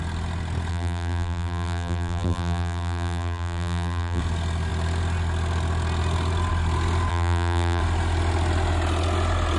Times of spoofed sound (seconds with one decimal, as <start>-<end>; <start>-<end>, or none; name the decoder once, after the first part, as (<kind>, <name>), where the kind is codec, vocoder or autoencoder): 0.7-4.2 (vocoder, BigVGAN v2); 7.1-7.8